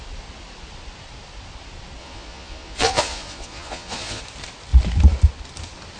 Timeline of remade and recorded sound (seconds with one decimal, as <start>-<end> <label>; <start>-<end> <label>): 0.0-2.0 recorded; 2.0-4.2 remade; 4.2-6.0 recorded